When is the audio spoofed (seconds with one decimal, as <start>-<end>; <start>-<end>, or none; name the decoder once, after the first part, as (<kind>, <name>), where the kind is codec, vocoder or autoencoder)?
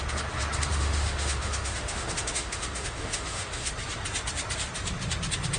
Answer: 0.7-3.7 (autoencoder, DAC-VAE)